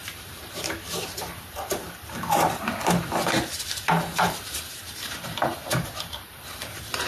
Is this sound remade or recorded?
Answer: remade